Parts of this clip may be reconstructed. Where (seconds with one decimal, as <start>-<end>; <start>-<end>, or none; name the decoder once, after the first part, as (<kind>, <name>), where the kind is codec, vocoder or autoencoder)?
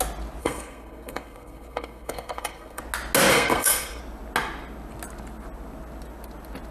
0.4-2.8 (codec, SNAC); 3.3-4.0